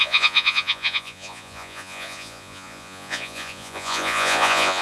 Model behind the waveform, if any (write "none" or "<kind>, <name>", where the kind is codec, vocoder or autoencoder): vocoder, Vocos